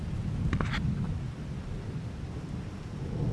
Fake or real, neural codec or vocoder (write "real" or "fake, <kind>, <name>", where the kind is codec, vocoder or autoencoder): real